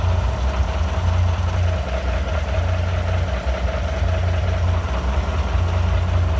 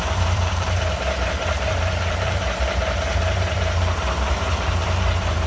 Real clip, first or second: first